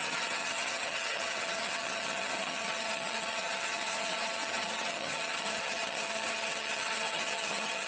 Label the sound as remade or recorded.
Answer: remade